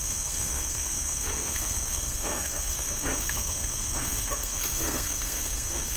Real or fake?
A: fake